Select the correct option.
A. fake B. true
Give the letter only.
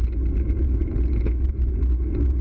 B